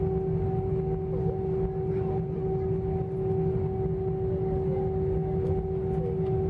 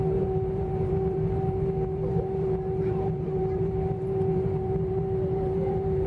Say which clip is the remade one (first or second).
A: second